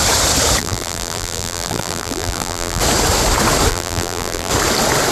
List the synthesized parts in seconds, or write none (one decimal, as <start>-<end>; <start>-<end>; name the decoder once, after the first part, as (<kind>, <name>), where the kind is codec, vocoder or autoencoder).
0.6-2.8 (vocoder, BigVGAN v2); 3.7-4.5